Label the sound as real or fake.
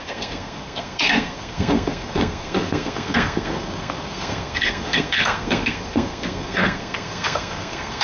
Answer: fake